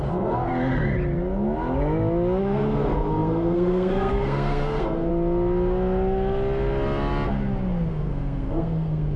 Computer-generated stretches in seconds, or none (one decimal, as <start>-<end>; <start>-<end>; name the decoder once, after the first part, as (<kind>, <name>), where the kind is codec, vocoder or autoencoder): 0.0-0.5 (codec, SNAC); 2.4-5.1; 7.9-9.2